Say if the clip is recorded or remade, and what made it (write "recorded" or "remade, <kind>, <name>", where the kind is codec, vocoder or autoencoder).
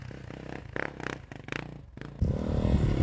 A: recorded